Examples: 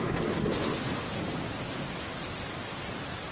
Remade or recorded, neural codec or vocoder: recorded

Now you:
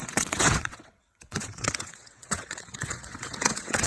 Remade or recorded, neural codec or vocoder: remade, vocoder, WaveNeXt